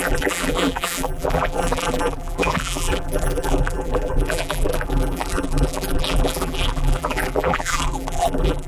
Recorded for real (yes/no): no